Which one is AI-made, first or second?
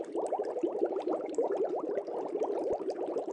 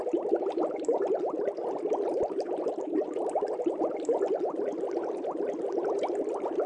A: first